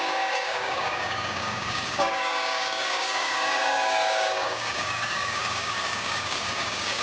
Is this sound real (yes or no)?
no